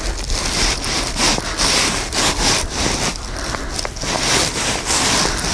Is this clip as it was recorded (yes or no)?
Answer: yes